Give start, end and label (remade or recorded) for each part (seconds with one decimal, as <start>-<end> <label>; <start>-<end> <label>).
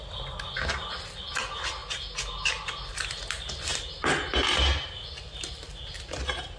0.0-6.6 recorded